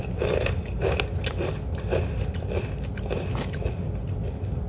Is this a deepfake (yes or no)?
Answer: no